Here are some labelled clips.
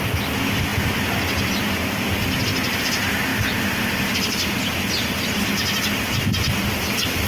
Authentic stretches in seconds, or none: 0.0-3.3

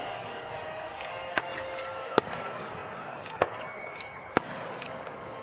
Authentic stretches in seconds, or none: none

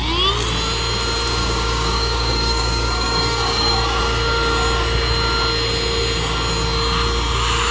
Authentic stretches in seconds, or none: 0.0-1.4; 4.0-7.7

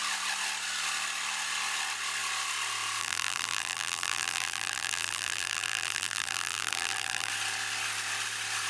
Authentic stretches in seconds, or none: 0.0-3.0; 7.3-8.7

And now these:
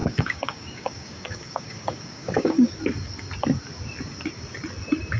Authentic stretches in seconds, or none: 2.8-5.2

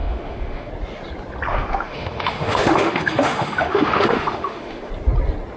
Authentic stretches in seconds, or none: 0.7-1.5; 4.9-5.6